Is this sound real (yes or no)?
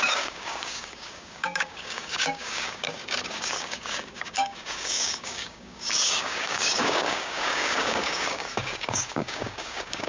no